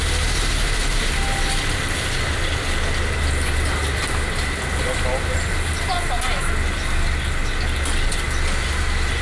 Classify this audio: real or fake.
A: real